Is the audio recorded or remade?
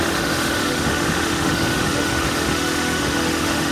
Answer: remade